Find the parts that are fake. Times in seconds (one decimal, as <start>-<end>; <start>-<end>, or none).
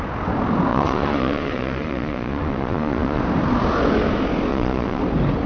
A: 0.7-3.2; 4.5-5.0